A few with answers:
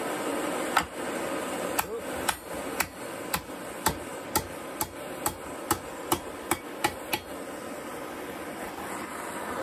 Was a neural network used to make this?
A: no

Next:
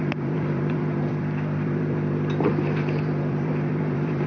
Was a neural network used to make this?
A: yes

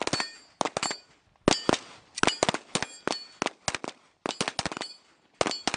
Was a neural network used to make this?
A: no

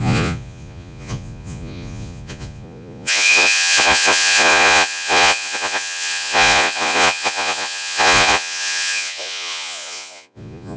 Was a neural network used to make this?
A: yes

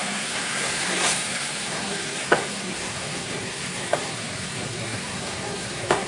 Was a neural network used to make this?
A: yes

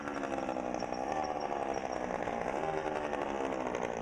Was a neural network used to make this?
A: no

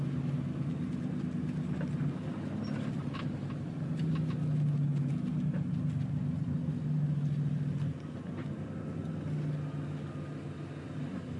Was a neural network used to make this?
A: no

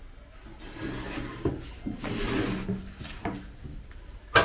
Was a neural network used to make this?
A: no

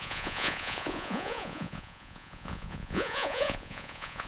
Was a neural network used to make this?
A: yes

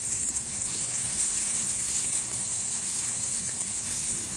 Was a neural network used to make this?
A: yes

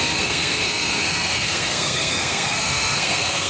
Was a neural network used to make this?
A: yes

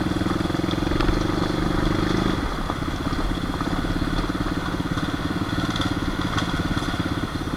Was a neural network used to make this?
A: no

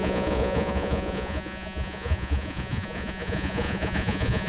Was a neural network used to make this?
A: yes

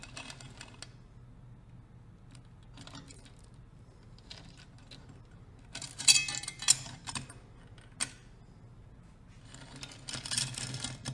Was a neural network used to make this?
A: no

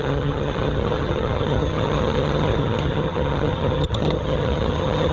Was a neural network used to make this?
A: yes